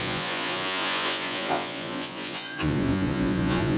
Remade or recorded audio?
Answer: remade